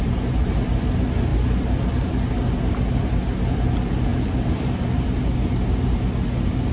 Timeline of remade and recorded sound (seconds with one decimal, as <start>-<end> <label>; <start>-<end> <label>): 0.0-1.3 recorded; 1.3-2.3 remade; 2.3-4.1 recorded; 4.1-4.8 remade; 4.8-6.7 recorded